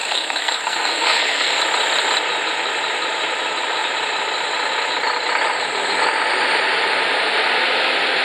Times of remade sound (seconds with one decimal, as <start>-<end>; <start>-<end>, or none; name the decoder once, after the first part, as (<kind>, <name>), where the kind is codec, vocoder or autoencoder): 0.0-1.6 (codec, SNAC)